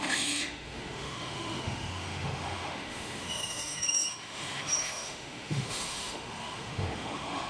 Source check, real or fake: fake